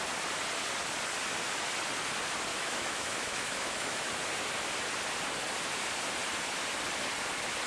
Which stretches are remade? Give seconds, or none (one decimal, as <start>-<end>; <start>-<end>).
2.5-4.0